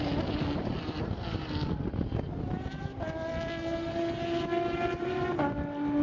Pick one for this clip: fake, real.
real